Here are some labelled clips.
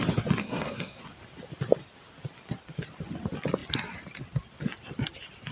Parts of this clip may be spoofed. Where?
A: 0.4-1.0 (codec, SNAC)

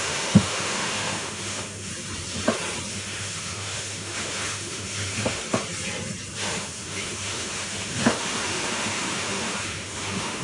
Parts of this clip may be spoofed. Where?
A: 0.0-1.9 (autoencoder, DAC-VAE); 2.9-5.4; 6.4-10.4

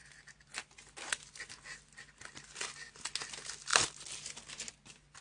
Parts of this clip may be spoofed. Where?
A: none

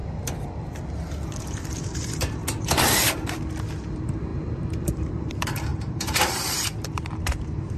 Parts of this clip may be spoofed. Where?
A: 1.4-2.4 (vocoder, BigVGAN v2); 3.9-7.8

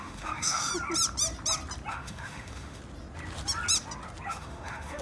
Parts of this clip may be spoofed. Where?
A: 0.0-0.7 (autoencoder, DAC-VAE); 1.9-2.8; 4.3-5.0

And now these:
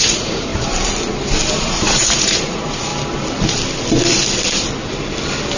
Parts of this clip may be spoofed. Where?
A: 0.0-0.5 (vocoder, Vocos); 1.5-2.9

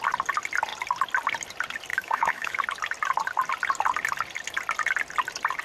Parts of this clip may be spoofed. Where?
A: 1.9-2.6 (autoencoder, DAC-VAE)

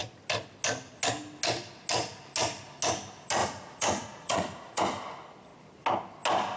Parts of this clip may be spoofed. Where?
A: 3.4-4.8 (vocoder, Vocos)